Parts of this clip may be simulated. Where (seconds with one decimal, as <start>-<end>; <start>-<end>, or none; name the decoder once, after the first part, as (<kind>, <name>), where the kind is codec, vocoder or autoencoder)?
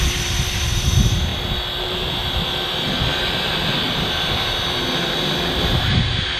0.0-1.3 (vocoder, BigVGAN v2); 1.8-2.2; 5.0-6.4